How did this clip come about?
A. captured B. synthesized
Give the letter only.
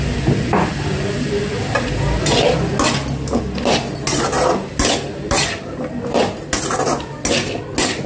A